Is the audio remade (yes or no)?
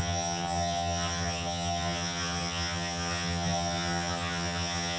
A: yes